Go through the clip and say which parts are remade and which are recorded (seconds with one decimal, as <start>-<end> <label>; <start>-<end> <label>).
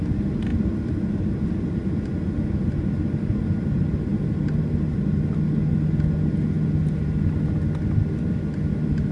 0.0-9.1 recorded